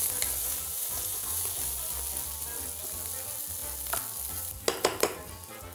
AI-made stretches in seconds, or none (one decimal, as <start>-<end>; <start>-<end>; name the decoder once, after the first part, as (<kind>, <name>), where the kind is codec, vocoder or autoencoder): 0.4-1.6 (vocoder, Vocos)